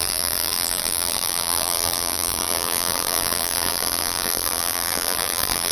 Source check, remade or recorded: remade